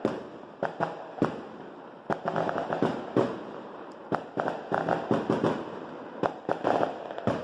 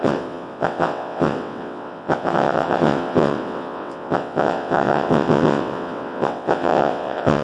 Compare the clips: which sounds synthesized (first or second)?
second